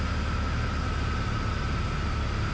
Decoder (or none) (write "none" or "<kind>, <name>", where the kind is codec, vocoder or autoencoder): none